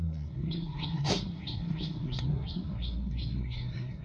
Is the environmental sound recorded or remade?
remade